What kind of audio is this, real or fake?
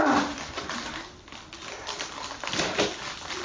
fake